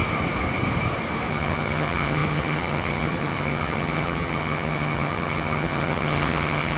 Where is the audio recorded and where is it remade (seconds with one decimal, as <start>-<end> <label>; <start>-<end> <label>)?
0.0-1.3 recorded; 1.3-6.8 remade